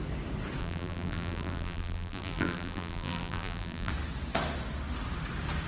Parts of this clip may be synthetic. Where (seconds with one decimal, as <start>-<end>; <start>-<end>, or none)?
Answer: 0.6-3.9